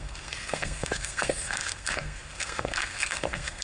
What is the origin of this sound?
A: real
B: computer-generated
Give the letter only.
B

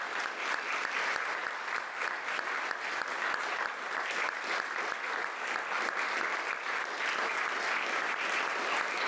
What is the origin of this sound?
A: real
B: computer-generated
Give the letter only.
A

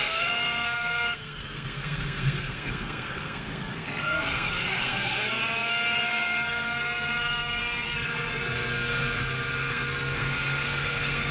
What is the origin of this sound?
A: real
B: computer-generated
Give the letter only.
B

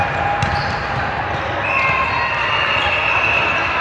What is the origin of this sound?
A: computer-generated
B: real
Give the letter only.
B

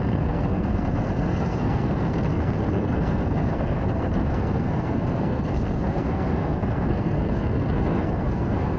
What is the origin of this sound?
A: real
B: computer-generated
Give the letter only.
B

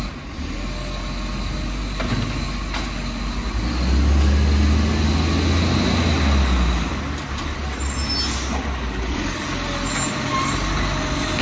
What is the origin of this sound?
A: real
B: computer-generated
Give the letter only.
A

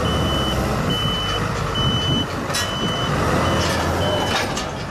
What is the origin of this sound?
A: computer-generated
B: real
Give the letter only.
B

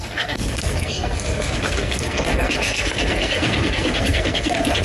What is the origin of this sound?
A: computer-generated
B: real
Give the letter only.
A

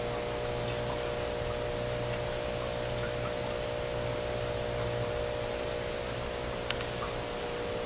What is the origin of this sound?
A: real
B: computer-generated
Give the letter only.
A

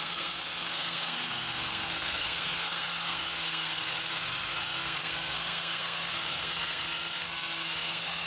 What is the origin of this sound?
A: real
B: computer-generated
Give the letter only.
B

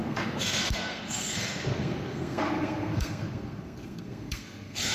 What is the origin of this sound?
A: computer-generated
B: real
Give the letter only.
A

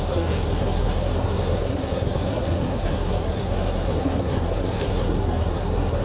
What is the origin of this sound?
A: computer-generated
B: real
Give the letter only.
A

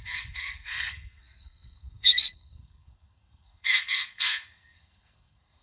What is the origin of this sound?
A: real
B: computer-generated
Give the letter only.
B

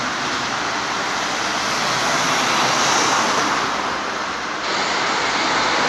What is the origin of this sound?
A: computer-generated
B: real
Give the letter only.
B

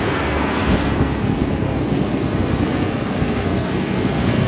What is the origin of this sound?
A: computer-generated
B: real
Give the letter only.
A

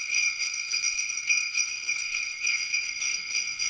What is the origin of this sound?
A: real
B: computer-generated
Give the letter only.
B